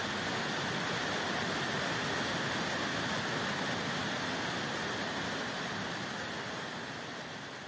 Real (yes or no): yes